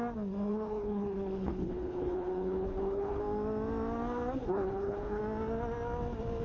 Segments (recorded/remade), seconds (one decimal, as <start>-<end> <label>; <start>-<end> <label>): 0.0-0.5 recorded; 0.5-3.2 remade; 3.2-4.4 recorded; 4.4-5.2 remade; 5.2-6.4 recorded